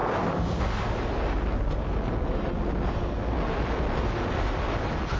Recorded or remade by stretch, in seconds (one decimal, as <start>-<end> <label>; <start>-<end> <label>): 0.0-5.2 recorded